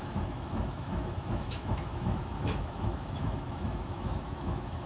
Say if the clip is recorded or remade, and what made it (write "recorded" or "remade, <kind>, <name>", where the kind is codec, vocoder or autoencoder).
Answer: remade, autoencoder, DAC-VAE